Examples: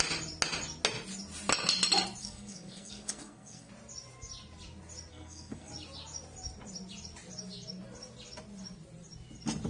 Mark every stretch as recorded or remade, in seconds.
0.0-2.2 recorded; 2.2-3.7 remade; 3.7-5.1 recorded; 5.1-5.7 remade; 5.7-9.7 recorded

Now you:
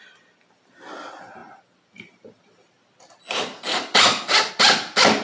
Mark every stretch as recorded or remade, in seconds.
0.0-5.2 recorded

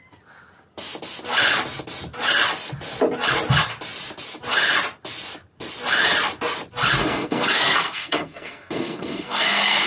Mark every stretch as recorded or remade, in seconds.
0.0-7.0 recorded; 7.0-9.9 remade

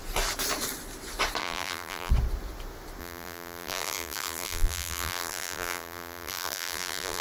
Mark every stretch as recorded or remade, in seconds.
0.0-1.4 recorded; 1.4-2.1 remade; 2.1-3.0 recorded; 3.0-7.2 remade

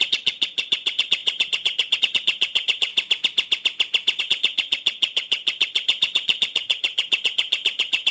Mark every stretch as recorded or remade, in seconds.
0.0-2.9 remade; 2.9-4.2 recorded; 4.2-8.1 remade